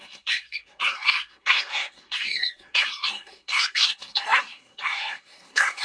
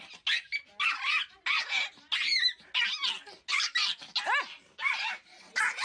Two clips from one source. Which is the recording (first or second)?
second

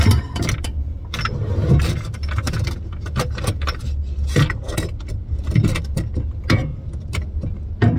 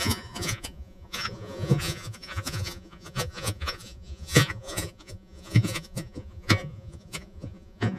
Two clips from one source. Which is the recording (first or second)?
first